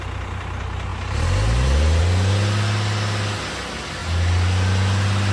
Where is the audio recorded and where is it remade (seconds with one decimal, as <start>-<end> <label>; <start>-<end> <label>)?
0.0-5.3 recorded